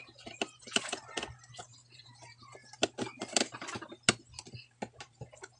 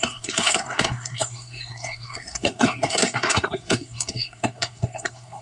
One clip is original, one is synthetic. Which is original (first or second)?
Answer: first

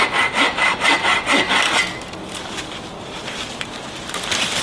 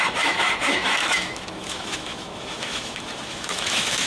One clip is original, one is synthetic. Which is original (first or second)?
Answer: first